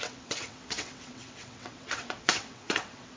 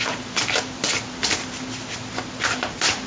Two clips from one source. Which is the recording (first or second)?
second